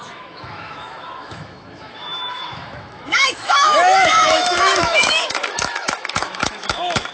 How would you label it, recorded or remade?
remade